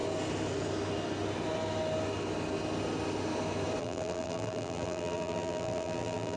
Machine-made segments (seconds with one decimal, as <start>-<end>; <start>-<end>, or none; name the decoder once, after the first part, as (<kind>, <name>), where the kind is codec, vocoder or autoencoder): 3.8-6.4 (vocoder, BigVGAN v2)